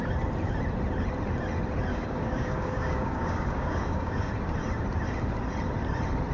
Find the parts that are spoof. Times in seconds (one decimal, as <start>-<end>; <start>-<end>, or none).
1.9-4.3